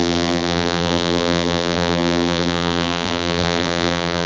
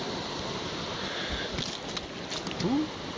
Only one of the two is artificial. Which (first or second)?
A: first